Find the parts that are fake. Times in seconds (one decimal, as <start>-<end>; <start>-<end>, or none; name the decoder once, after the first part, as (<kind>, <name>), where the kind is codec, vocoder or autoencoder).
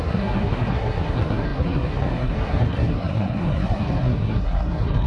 0.0-5.1 (codec, SNAC)